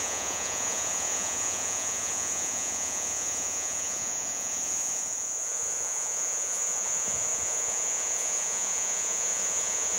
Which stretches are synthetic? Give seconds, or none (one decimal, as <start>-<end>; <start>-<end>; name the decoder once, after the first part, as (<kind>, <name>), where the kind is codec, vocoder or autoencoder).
0.0-10.0 (vocoder, Vocos)